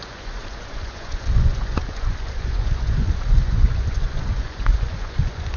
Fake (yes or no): yes